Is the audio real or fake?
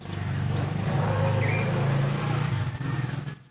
real